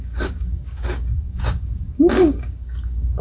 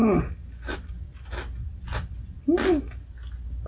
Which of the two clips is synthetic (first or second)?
first